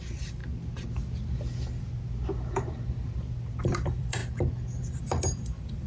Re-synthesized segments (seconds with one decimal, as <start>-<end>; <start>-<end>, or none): 0.0-0.4; 3.6-4.2; 4.8-5.9